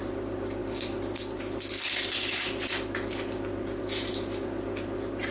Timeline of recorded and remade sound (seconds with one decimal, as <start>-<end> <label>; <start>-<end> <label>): 0.0-5.3 recorded